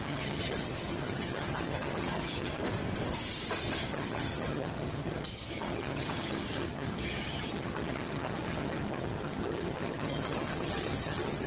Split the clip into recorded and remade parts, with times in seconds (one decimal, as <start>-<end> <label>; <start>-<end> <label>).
0.0-2.6 remade; 2.6-3.8 recorded; 3.8-11.5 remade